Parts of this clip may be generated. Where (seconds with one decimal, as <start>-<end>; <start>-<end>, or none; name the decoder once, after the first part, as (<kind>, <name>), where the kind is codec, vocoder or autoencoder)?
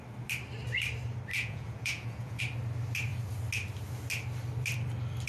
1.3-2.4 (vocoder, Vocos)